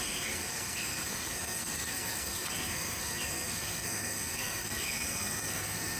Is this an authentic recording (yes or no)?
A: no